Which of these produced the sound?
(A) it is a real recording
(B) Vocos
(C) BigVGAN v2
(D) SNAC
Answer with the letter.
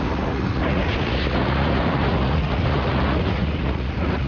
B